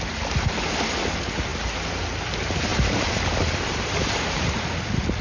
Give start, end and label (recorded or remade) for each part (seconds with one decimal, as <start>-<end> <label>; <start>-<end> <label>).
0.0-2.7 recorded; 2.7-4.6 remade; 4.6-5.2 recorded